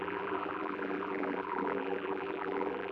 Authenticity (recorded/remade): remade